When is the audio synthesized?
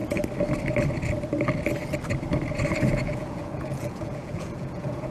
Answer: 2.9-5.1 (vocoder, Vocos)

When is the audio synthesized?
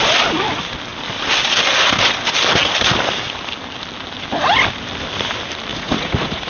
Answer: 5.7-6.5 (vocoder, Vocos)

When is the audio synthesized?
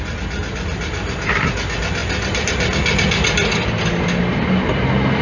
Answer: none